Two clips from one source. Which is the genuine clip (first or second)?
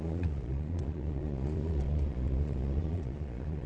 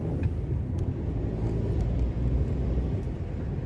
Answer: second